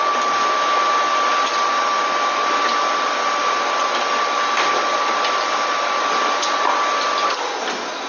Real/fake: real